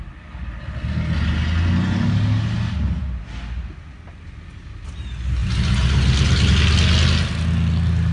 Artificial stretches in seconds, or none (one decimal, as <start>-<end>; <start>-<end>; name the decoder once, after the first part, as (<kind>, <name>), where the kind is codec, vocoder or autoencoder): 5.4-6.5 (vocoder, BigVGAN v2)